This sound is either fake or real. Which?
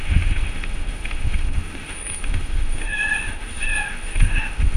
fake